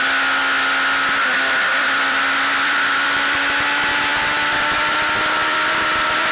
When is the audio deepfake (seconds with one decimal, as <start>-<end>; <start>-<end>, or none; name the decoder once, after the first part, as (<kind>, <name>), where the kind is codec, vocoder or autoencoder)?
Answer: 1.7-3.4 (vocoder, BigVGAN v2); 4.1-4.6; 5.5-6.3

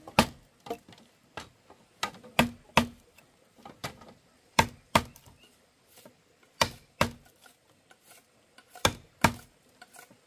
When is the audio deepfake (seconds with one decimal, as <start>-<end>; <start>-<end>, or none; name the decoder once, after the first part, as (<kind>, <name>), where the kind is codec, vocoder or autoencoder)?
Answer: 3.8-6.1 (vocoder, BigVGAN v2)

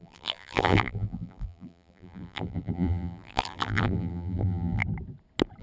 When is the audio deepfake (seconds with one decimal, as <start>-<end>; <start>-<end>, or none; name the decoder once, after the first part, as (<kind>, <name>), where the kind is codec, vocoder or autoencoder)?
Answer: 0.0-4.8 (vocoder, BigVGAN v2)

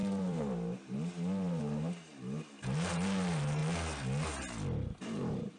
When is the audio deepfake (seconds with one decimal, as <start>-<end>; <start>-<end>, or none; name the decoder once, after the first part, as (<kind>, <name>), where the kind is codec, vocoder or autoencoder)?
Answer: 0.0-3.6 (vocoder, BigVGAN v2); 5.0-5.6

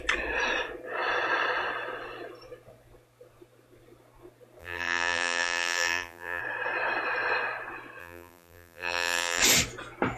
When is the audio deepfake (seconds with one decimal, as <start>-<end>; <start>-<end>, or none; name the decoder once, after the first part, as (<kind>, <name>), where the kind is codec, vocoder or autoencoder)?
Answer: 4.6-6.4 (vocoder, BigVGAN v2); 8.0-9.4

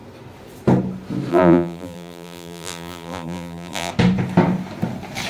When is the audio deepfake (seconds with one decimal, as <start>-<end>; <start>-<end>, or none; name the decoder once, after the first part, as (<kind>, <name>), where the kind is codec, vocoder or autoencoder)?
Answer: 1.3-3.9 (vocoder, BigVGAN v2)